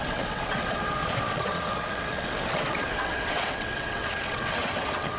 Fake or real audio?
fake